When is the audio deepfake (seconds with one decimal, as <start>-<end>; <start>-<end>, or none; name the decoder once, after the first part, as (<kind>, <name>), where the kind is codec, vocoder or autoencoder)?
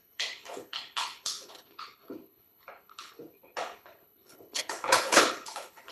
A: 0.0-5.9 (codec, HILCodec)